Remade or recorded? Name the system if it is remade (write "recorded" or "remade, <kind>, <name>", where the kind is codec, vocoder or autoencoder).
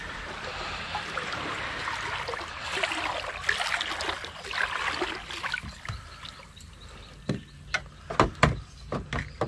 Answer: recorded